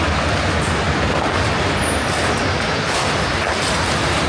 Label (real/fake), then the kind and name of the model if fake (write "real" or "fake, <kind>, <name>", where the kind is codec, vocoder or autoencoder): real